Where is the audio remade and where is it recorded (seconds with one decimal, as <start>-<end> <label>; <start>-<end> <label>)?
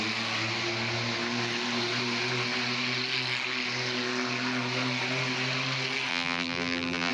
0.0-6.1 recorded; 6.1-7.1 remade